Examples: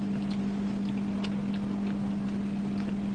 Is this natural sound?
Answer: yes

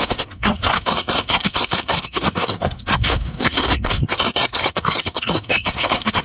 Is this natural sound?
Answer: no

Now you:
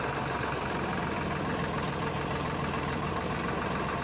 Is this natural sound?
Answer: no